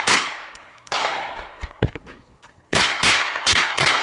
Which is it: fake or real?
fake